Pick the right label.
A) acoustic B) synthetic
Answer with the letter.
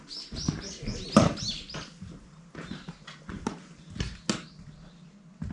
A